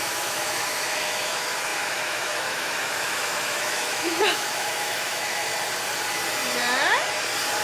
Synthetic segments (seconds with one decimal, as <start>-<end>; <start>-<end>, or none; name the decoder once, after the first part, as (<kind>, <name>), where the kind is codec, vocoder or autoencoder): 0.0-5.5 (autoencoder, DAC-VAE)